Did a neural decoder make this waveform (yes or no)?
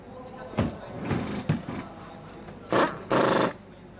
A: no